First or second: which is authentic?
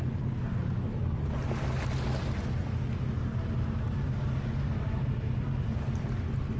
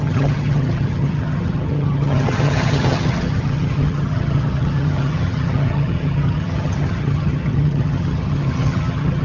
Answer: first